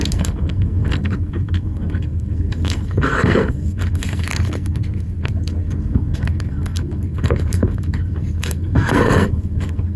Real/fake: fake